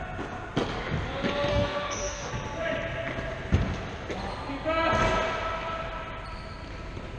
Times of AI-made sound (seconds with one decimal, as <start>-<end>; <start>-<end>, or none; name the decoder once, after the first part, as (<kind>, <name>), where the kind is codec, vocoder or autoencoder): 1.5-2.3 (codec, DAC)

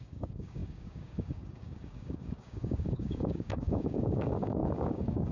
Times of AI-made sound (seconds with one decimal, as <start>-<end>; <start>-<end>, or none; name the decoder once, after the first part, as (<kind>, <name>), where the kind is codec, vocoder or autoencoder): 0.0-5.3 (codec, DAC)

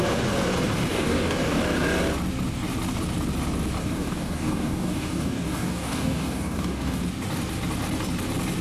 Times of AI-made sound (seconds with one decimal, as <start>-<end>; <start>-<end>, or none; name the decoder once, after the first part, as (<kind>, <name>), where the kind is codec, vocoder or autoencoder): 0.9-1.6 (codec, DAC); 3.8-7.0

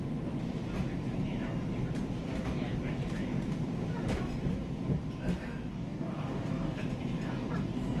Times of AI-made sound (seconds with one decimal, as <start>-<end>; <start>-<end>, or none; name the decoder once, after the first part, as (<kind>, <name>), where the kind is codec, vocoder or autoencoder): 5.7-6.8 (codec, DAC)

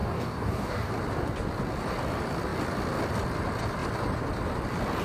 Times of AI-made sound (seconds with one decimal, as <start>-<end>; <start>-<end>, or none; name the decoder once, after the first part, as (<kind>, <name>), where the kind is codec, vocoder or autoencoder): 0.0-0.9 (codec, DAC)

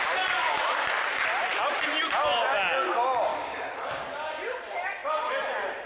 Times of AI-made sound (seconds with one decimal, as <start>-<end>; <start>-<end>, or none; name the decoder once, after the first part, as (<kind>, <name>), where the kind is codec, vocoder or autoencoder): 3.3-4.1 (codec, DAC)

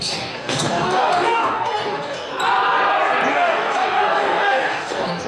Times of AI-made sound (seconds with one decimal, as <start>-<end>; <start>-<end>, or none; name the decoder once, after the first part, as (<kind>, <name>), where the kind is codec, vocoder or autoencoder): 0.0-2.3 (codec, DAC); 3.3-5.3

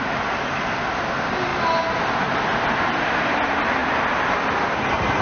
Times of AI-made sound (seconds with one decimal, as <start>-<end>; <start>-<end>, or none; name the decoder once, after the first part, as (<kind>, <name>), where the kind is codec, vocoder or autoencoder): none